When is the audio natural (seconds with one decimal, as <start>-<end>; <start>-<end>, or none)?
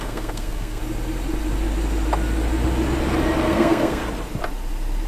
0.8-3.4; 4.0-5.1